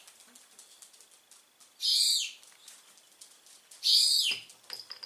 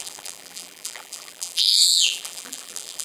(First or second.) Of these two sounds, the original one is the first